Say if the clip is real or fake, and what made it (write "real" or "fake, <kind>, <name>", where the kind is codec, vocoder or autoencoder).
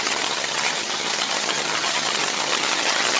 fake, vocoder, HiFi-GAN